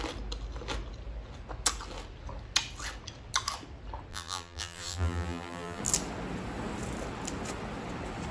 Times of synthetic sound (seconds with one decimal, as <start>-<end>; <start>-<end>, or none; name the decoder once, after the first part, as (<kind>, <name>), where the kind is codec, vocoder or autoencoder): 4.1-5.8 (vocoder, BigVGAN v2)